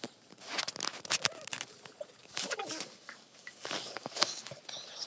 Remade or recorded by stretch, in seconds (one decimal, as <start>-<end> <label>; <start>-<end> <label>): 0.0-2.2 recorded; 2.2-4.6 remade; 4.6-5.1 recorded

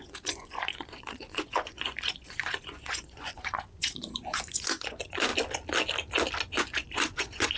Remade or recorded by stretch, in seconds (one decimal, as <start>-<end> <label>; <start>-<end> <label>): 0.0-5.3 remade; 5.3-6.6 recorded; 6.6-7.6 remade

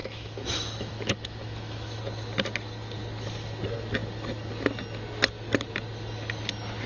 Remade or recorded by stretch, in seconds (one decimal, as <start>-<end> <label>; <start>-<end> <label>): 0.0-2.0 remade; 2.0-6.9 recorded

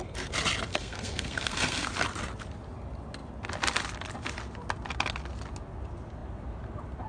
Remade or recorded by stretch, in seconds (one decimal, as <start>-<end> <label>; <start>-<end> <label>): 0.0-0.7 recorded; 0.7-1.9 remade; 1.9-7.1 recorded

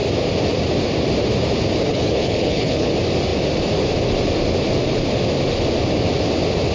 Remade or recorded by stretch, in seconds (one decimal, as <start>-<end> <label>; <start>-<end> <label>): 0.0-1.9 recorded; 1.9-2.9 remade; 2.9-6.7 recorded